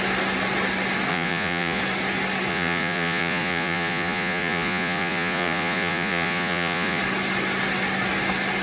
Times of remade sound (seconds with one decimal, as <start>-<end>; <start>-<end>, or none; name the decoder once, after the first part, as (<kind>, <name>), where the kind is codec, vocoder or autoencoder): 1.1-1.8 (vocoder, Vocos); 2.5-7.0